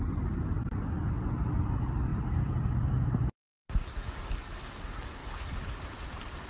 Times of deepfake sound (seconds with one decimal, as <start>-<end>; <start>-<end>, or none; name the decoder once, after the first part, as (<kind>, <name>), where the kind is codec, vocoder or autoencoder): 2.1-3.6 (vocoder, BigVGAN v2); 5.2-6.5